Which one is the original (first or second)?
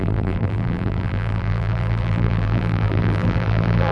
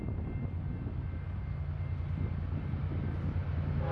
second